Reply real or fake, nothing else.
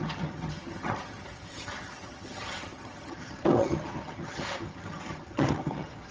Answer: fake